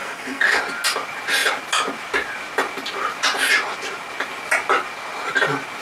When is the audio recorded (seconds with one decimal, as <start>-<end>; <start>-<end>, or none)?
0.6-5.8